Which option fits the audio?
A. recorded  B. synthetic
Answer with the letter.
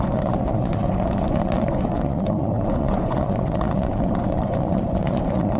B